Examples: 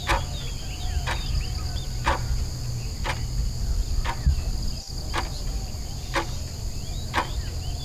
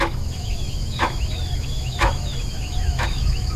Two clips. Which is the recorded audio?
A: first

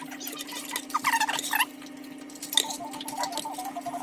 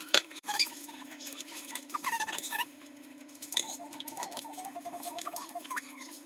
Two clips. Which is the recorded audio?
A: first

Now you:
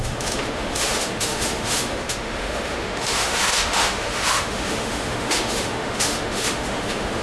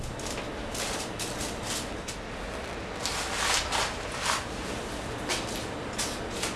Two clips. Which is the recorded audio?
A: second